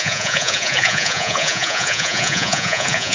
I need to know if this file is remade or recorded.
remade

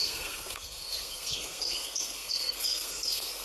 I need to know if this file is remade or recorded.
remade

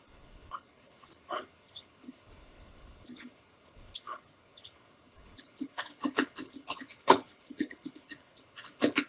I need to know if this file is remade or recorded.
remade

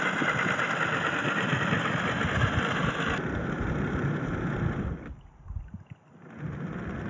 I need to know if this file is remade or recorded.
recorded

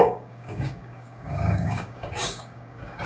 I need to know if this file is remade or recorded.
remade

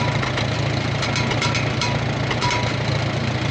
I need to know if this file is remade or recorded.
recorded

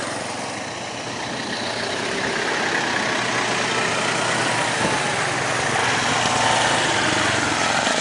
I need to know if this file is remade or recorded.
recorded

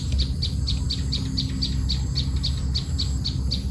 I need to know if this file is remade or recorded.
recorded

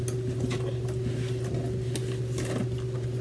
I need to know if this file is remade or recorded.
recorded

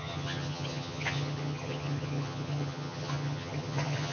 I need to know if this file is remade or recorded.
remade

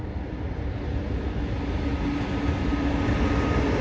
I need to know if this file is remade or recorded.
recorded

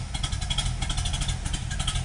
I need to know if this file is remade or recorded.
recorded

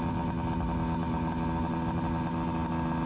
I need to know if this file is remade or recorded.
recorded